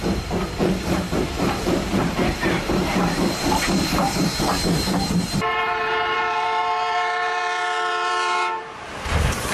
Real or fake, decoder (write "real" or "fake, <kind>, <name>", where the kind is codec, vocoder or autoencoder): fake, vocoder, BigVGAN v2